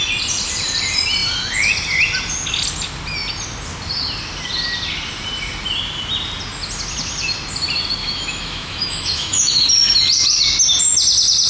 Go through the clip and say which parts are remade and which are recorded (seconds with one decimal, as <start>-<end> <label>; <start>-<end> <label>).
0.0-8.0 recorded; 8.0-9.6 remade; 9.6-11.5 recorded